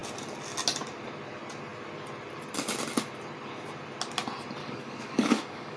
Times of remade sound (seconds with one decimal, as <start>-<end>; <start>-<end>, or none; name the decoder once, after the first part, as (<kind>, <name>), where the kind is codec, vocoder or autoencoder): 4.6-5.8 (codec, DAC)